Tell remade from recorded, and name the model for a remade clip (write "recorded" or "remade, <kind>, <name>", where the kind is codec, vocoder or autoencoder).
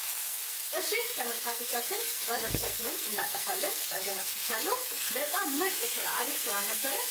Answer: remade, codec, SNAC